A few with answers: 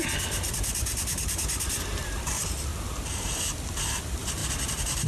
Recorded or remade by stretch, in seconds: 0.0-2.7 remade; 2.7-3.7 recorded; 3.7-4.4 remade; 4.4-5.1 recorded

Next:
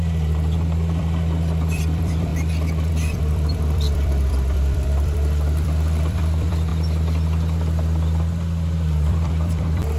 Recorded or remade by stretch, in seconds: 0.0-6.7 remade; 6.7-9.1 recorded; 9.1-10.0 remade

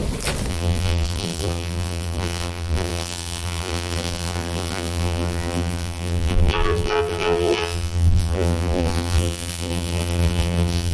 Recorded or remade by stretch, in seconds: 0.0-0.5 recorded; 0.5-10.9 remade

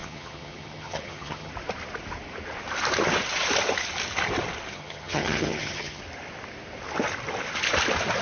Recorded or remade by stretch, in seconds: 0.0-1.5 remade; 1.5-4.7 recorded; 4.7-6.0 remade; 6.0-8.2 recorded

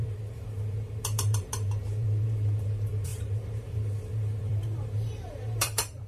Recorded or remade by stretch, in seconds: 0.0-6.1 remade

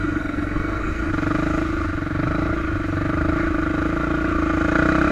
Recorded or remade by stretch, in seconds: 0.0-1.1 remade; 1.1-5.1 recorded